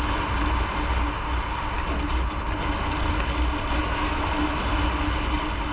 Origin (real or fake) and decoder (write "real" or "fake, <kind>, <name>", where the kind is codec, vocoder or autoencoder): real